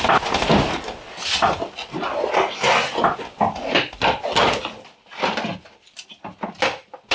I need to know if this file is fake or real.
real